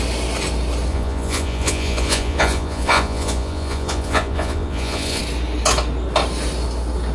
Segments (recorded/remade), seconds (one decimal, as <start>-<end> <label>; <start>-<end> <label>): 0.0-0.9 recorded; 0.9-5.2 remade; 5.2-7.1 recorded